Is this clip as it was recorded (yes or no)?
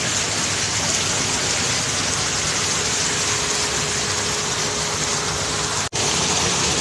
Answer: yes